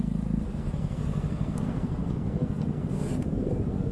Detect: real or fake fake